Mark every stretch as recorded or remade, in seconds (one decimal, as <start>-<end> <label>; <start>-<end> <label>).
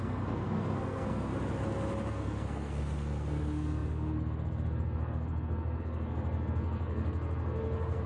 0.0-1.3 remade; 1.3-2.1 recorded; 2.1-8.1 remade